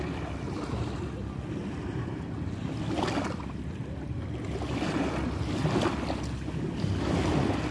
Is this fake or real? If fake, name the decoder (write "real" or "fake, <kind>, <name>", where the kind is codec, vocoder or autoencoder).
real